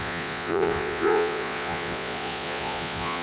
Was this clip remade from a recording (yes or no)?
yes